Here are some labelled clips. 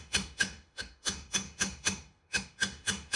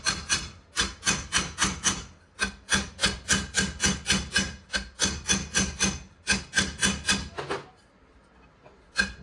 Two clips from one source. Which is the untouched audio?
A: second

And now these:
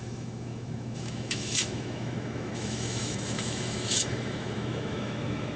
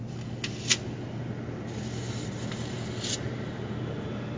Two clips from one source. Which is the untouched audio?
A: second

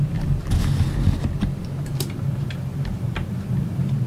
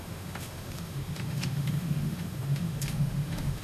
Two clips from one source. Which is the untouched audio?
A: first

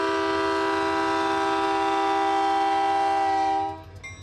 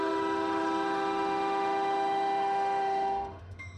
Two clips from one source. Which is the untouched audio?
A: first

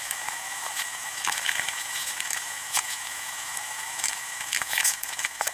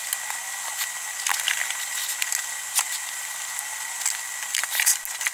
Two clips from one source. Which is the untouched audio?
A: second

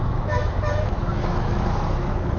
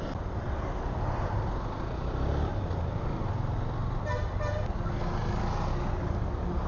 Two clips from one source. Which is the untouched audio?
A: second